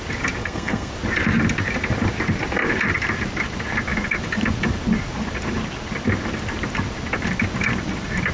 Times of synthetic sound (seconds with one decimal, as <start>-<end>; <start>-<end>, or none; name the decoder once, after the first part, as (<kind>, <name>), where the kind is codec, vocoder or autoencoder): 0.4-0.9 (codec, SNAC)